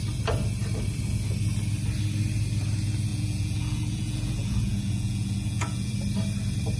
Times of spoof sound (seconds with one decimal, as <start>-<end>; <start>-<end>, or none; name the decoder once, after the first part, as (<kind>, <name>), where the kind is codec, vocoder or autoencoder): 3.1-5.9 (vocoder, Vocos)